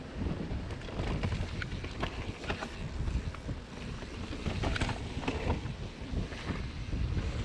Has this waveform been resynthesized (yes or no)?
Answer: no